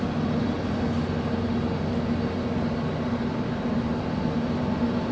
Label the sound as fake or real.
real